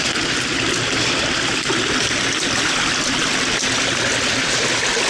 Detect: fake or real real